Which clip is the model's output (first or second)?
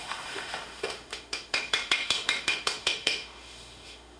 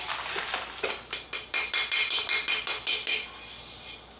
first